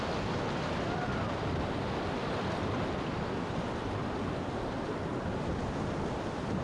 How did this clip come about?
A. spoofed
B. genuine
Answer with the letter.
B